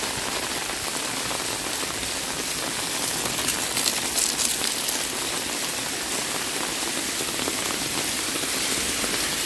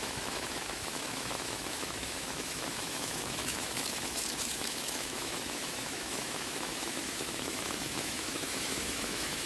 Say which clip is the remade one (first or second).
second